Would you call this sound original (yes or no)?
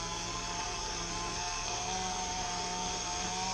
no